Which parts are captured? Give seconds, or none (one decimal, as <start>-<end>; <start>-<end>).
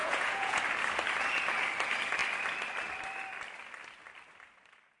0.6-5.0